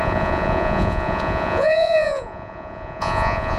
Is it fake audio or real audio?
fake